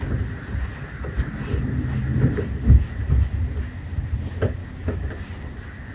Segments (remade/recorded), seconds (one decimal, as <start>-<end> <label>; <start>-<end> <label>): 0.0-4.6 recorded; 4.6-5.3 remade; 5.3-5.9 recorded

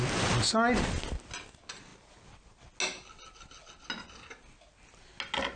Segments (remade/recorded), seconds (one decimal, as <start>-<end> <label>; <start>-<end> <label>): 0.0-5.6 recorded

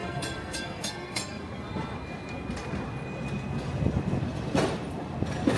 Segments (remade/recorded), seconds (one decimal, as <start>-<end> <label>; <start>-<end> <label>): 0.0-1.4 remade; 1.4-5.6 recorded

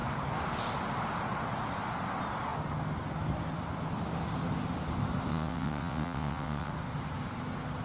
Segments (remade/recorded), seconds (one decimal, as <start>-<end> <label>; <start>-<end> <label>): 0.0-5.3 recorded; 5.3-6.7 remade; 6.7-7.8 recorded

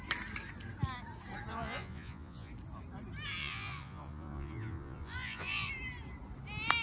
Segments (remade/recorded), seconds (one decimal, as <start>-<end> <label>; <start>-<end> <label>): 0.0-1.5 recorded; 1.5-2.5 remade; 2.5-3.4 recorded; 3.4-5.7 remade; 5.7-6.8 recorded

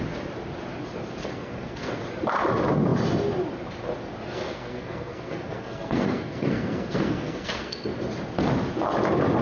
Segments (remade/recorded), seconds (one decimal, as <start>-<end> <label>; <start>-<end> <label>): 0.0-1.2 recorded; 1.2-2.0 remade; 2.0-4.3 recorded; 4.3-7.9 remade; 7.9-9.4 recorded